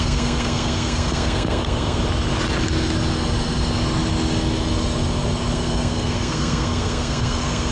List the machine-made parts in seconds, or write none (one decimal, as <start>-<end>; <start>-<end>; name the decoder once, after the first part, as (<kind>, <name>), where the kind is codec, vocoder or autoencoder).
0.0-2.0 (codec, SNAC); 5.5-7.7